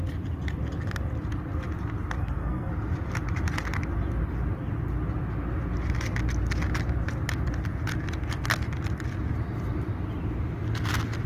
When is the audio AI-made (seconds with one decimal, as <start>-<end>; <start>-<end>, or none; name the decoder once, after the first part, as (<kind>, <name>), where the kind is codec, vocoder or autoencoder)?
2.2-2.7 (codec, SNAC)